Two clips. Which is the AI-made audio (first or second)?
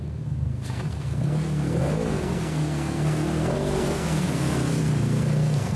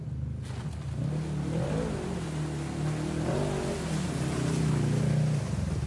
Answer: first